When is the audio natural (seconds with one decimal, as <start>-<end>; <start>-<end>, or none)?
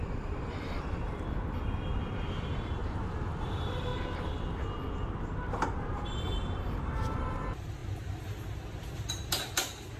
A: 3.9-5.5; 7.8-9.1